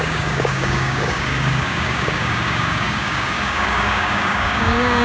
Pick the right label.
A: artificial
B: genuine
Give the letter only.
A